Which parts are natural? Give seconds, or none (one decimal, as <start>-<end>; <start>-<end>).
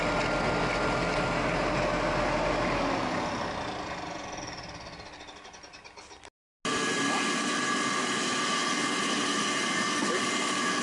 0.0-10.8